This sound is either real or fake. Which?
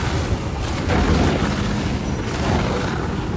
real